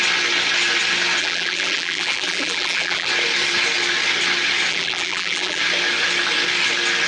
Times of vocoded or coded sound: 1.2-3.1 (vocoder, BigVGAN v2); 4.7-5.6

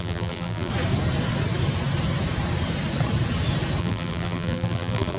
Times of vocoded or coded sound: 0.0-0.7 (vocoder, BigVGAN v2); 3.8-5.2

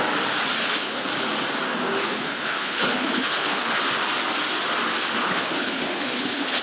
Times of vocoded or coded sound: 0.6-1.1 (codec, HILCodec); 2.0-3.8; 5.2-6.6